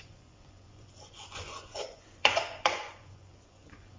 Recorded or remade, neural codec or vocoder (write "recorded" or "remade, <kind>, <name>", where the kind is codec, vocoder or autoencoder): remade, vocoder, Vocos